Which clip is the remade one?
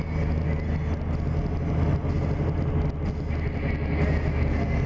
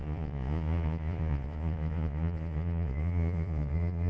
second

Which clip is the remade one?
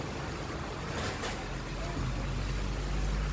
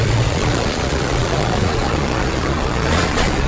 second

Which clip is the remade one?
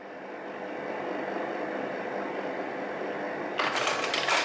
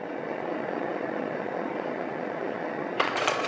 second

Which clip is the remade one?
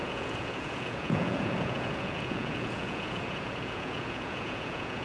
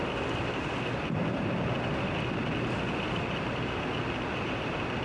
first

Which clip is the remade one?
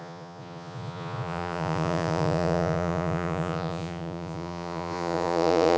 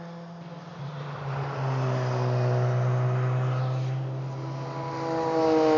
first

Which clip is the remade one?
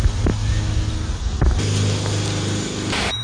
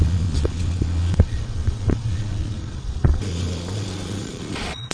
second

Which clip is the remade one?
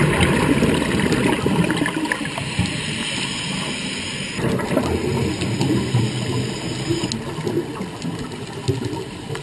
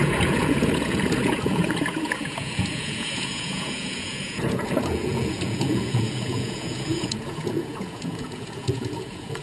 second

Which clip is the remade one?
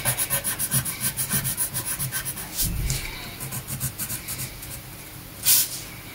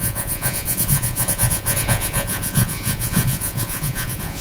second